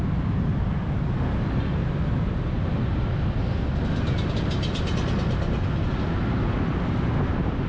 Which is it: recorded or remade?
recorded